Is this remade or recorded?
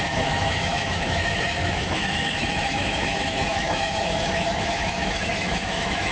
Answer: remade